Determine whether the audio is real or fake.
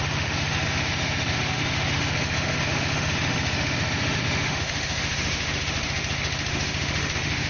fake